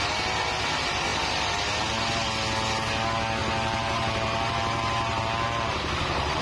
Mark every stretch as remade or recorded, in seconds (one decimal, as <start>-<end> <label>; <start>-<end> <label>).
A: 0.0-3.4 recorded; 3.4-5.2 remade; 5.2-6.4 recorded